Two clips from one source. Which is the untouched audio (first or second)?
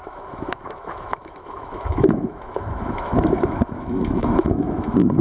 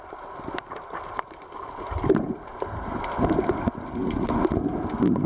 second